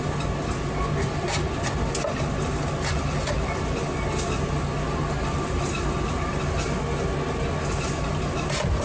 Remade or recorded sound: recorded